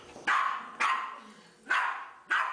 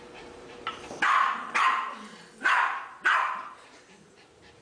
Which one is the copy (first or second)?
second